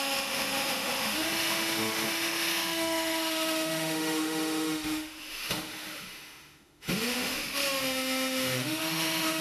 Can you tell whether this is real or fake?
fake